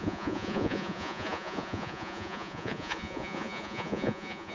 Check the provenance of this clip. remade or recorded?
remade